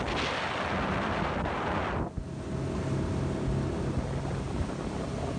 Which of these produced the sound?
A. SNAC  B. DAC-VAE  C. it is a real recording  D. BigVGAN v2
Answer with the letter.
C